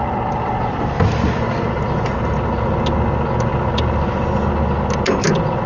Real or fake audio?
real